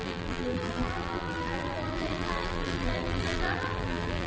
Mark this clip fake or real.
fake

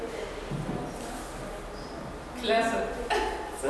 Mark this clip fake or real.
real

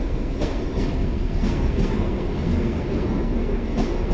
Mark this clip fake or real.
fake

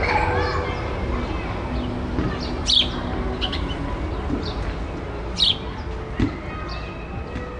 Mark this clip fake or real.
real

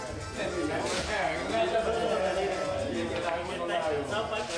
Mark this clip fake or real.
real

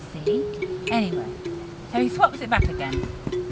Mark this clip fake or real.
real